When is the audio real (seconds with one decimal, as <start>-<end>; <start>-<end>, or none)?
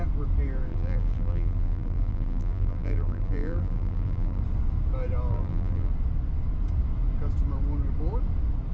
0.0-0.7; 4.4-5.3; 5.9-8.7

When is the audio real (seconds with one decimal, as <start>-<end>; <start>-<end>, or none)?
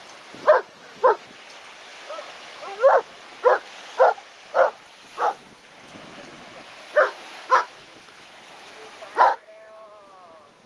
0.0-1.9; 3.0-5.1; 8.7-9.3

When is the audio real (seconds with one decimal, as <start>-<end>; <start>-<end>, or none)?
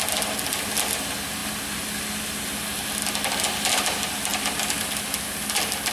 0.0-5.9